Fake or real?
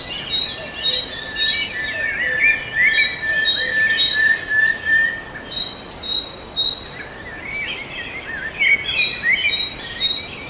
real